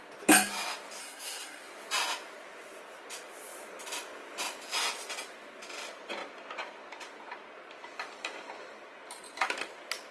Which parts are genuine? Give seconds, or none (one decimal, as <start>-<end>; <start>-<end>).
0.0-1.0; 1.6-10.1